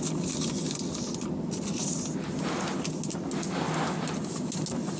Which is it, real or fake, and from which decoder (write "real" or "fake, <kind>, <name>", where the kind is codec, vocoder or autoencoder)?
real